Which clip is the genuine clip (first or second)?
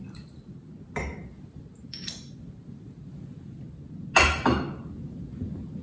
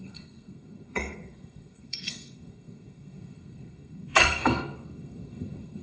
first